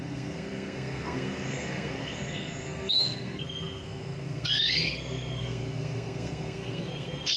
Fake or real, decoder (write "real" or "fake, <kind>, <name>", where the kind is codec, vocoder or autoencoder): fake, codec, SNAC